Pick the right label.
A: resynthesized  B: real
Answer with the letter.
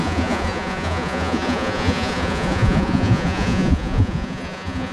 A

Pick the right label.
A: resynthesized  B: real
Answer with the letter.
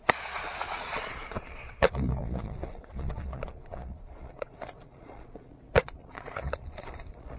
A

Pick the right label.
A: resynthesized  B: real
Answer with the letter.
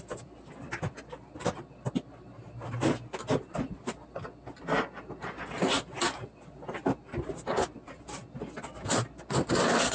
B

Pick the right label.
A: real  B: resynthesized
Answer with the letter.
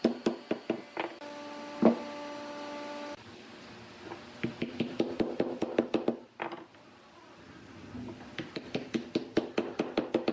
A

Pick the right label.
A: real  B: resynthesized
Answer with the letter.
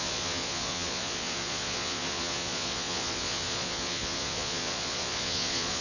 B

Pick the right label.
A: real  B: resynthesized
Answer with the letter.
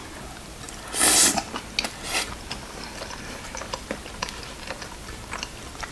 A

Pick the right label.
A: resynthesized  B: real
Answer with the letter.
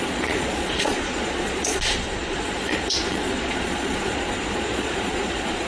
A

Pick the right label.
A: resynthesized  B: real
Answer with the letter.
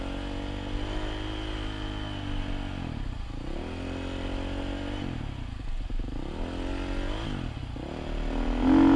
B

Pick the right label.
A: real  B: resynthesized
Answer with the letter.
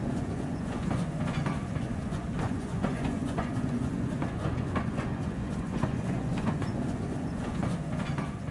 B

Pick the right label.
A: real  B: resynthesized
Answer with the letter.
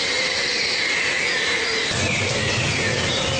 A